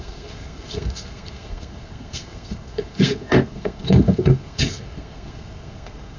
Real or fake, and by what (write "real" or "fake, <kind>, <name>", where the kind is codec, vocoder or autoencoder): fake, codec, SNAC